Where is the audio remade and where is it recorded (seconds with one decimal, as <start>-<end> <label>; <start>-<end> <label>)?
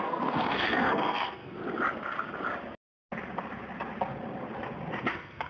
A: 0.0-1.6 remade; 1.6-4.9 recorded; 4.9-5.5 remade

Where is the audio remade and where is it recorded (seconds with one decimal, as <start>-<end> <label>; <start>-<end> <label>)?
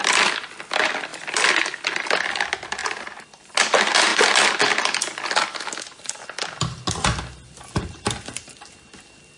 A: 0.0-2.8 recorded; 2.8-3.5 remade; 3.5-9.4 recorded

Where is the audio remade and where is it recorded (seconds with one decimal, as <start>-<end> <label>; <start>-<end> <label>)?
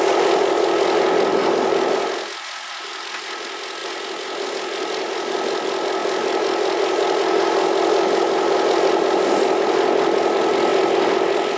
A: 0.0-11.6 recorded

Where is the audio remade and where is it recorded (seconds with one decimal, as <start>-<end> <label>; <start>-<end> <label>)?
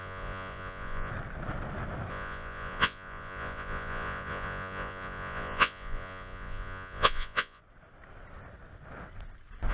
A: 0.0-1.1 remade; 1.1-2.1 recorded; 2.1-7.6 remade; 7.6-9.7 recorded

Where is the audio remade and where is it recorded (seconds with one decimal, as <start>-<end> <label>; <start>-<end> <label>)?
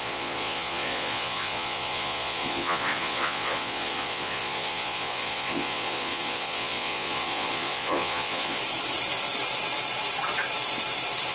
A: 0.0-8.6 remade; 8.6-11.3 recorded